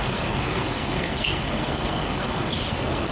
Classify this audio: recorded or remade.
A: remade